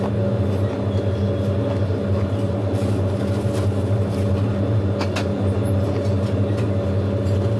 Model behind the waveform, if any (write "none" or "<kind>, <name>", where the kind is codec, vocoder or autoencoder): none